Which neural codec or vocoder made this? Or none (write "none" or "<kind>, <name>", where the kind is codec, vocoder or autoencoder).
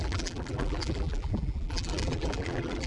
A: vocoder, BigVGAN v2